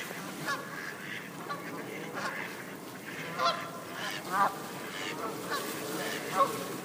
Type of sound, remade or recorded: recorded